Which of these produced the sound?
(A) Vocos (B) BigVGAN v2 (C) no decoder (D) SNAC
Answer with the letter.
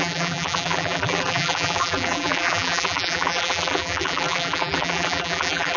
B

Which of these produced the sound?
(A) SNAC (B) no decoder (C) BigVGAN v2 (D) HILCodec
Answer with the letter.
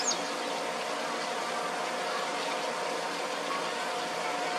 B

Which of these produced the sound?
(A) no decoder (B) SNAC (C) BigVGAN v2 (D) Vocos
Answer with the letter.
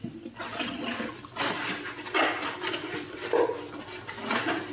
A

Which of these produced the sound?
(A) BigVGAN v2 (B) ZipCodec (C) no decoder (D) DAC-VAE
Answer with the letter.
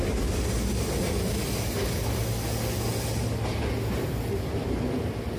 C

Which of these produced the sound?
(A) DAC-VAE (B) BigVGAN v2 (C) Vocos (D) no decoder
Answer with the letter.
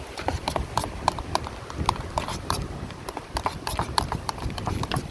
B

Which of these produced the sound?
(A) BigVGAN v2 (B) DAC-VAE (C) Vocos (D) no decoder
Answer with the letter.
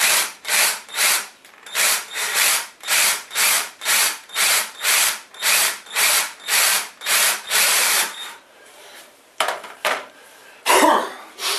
A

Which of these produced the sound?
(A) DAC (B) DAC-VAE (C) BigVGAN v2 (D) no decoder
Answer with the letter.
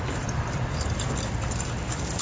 D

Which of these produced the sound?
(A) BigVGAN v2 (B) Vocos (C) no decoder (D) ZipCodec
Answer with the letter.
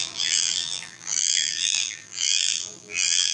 A